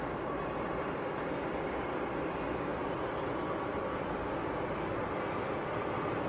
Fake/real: real